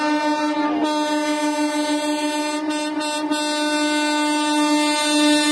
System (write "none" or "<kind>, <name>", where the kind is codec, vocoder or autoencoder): none